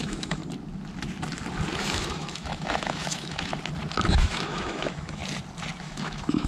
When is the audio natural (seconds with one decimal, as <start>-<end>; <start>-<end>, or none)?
0.4-1.8; 3.5-4.1; 5.2-5.8